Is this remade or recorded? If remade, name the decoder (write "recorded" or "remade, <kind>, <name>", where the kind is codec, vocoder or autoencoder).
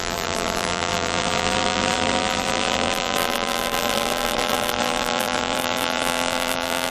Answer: remade, vocoder, BigVGAN v2